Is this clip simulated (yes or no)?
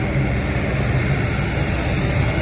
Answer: no